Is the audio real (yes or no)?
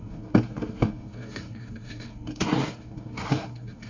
no